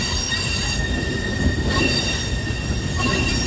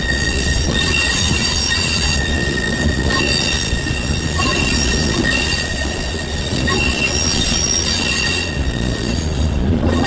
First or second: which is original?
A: first